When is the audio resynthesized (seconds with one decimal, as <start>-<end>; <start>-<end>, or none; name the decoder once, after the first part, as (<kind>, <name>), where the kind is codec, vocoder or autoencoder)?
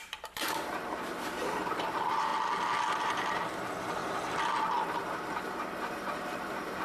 0.0-2.3 (vocoder, BigVGAN v2); 2.9-4.0; 5.4-6.8